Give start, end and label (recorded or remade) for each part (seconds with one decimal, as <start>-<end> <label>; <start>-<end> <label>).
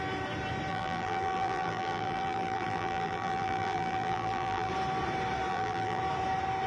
0.0-0.7 recorded; 0.7-4.7 remade; 4.7-5.5 recorded; 5.5-6.0 remade; 6.0-6.7 recorded